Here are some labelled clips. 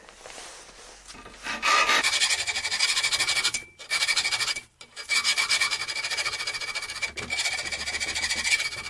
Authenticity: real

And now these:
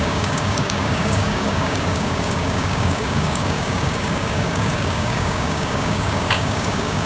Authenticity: fake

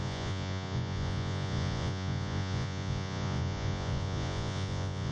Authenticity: fake